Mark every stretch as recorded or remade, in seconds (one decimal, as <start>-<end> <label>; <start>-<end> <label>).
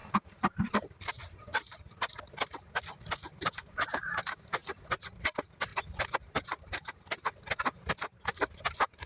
0.0-1.5 remade; 1.5-3.4 recorded; 3.4-4.6 remade; 4.6-5.2 recorded; 5.2-5.7 remade; 5.7-9.1 recorded